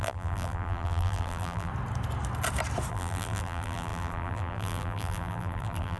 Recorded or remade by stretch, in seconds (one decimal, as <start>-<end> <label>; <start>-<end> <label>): 0.0-1.7 remade; 1.7-2.9 recorded; 2.9-6.0 remade

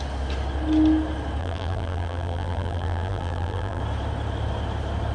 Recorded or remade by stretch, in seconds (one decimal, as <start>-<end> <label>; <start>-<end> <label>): 0.0-1.4 recorded; 1.4-3.8 remade; 3.8-5.1 recorded

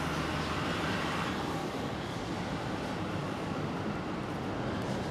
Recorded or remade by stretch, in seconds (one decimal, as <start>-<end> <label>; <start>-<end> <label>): 0.0-1.6 recorded; 1.6-2.2 remade; 2.2-3.2 recorded; 3.2-3.7 remade; 3.7-5.1 recorded

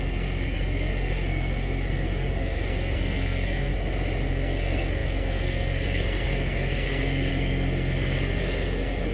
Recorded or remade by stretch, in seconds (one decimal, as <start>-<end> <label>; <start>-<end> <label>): 0.0-3.7 remade; 3.7-4.3 recorded; 4.3-9.1 remade